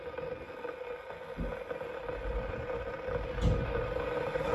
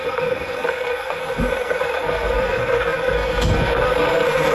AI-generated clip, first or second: second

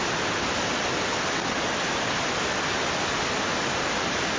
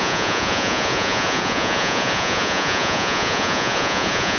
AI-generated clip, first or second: second